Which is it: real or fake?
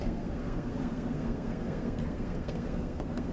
fake